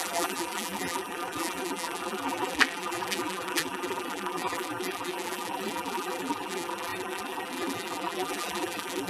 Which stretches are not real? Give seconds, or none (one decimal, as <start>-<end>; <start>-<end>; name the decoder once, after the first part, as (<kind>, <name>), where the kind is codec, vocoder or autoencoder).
0.0-9.1 (vocoder, BigVGAN v2)